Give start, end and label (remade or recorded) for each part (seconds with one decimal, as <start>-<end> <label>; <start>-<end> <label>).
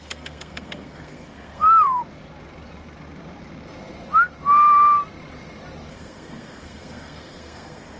0.0-2.0 remade; 2.0-5.9 recorded; 5.9-8.0 remade